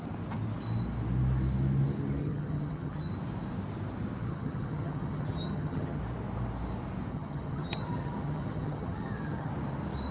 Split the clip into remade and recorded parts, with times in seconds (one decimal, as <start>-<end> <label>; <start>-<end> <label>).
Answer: 0.0-2.2 recorded; 2.2-3.1 remade; 3.1-4.2 recorded; 4.2-6.0 remade; 6.0-7.1 recorded; 7.1-9.5 remade; 9.5-10.1 recorded